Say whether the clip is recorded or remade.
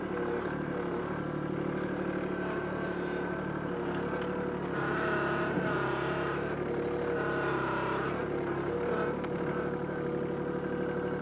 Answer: recorded